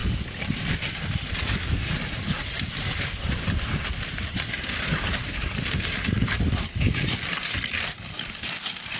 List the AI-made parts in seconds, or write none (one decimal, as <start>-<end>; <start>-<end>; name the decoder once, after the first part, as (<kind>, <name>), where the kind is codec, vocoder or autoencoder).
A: 1.8-4.6 (vocoder, BigVGAN v2); 5.3-6.2